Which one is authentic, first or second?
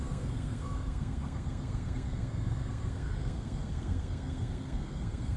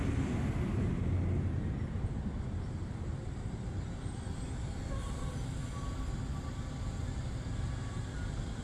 second